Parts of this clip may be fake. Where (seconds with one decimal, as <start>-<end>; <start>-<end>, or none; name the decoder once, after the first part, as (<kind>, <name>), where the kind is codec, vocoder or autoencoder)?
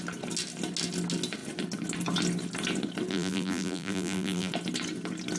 3.1-4.5 (vocoder, BigVGAN v2)